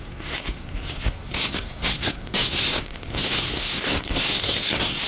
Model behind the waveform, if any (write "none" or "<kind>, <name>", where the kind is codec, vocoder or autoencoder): codec, SNAC